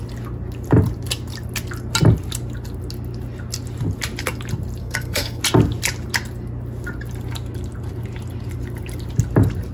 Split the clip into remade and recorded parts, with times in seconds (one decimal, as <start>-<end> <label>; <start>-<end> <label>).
0.0-4.8 recorded; 4.8-5.4 remade; 5.4-9.7 recorded